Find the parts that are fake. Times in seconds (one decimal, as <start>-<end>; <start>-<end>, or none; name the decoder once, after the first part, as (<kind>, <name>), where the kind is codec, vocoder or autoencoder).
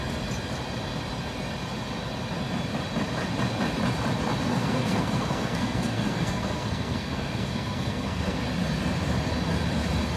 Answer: 4.5-8.4 (codec, SNAC)